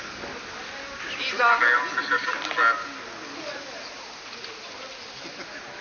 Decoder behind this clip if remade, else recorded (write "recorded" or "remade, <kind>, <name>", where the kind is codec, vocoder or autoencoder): recorded